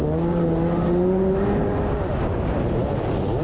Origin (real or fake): real